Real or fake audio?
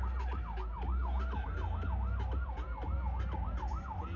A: real